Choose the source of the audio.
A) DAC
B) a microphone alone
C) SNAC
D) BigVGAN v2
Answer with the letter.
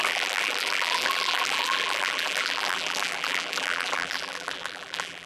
D